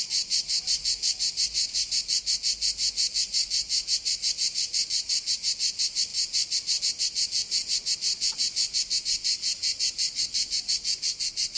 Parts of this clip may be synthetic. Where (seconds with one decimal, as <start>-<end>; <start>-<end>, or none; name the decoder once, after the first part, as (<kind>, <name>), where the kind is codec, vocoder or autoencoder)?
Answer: none